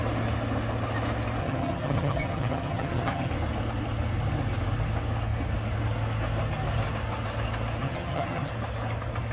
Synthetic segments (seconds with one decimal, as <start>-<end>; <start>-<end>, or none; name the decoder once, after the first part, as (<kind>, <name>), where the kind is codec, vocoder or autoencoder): 1.4-3.3 (vocoder, HiFi-GAN); 7.8-8.5